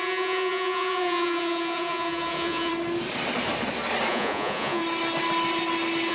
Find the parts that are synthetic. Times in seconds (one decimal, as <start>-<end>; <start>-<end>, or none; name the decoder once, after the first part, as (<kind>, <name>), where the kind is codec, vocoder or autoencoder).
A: 0.0-2.7 (vocoder, Vocos); 4.1-4.8

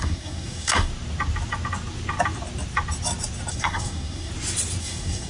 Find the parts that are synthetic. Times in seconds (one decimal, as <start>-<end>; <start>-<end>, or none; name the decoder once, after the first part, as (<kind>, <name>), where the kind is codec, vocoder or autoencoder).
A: 0.0-0.9 (codec, SNAC); 3.5-4.3; 4.8-5.3